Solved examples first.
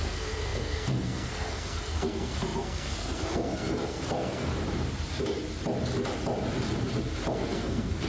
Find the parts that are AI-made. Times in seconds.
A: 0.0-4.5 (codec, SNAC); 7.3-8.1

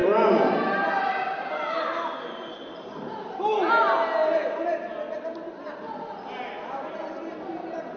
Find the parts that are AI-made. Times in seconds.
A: none

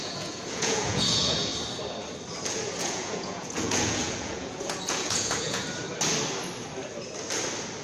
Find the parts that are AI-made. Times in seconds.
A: 0.0-1.5 (vocoder, Vocos); 2.8-5.6